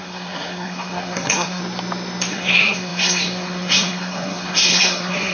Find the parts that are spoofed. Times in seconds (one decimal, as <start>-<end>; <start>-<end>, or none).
0.0-1.6; 2.3-5.3